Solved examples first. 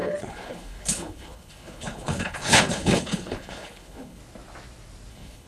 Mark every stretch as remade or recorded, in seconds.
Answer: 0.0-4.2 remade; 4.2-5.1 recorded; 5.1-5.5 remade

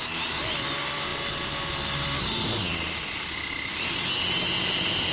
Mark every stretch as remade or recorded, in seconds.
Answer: 0.0-5.1 recorded

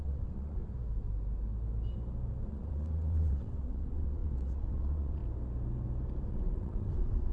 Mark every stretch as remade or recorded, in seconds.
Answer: 0.0-0.6 remade; 0.6-2.5 recorded; 2.5-5.2 remade; 5.2-6.3 recorded; 6.3-7.3 remade